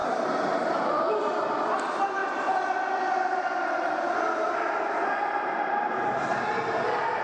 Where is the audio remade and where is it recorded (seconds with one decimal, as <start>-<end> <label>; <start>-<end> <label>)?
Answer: 0.0-7.2 remade